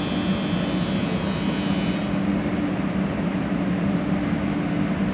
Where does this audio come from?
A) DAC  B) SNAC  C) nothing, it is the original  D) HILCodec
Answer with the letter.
C